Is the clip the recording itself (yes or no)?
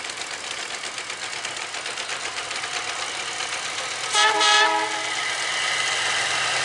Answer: yes